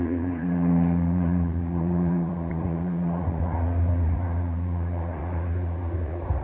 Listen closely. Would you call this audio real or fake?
fake